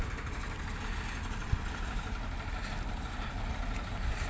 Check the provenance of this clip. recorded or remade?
recorded